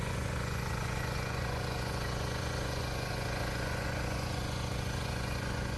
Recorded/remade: remade